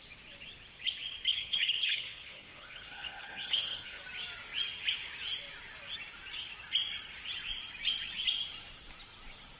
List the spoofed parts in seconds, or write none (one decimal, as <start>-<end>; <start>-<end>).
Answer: 1.3-4.0